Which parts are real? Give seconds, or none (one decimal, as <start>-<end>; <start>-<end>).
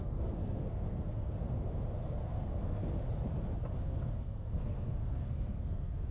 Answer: 1.4-2.0; 2.8-3.7